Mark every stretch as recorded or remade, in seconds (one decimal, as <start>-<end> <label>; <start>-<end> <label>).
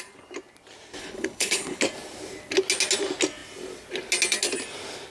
0.0-1.0 recorded; 1.0-1.8 remade; 1.8-5.1 recorded